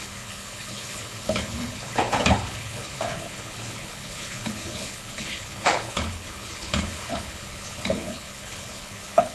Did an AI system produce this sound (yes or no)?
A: yes